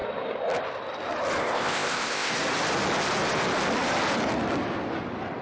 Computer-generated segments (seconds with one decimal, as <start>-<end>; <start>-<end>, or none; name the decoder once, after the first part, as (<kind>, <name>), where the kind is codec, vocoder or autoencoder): 1.4-2.3 (codec, ZipCodec)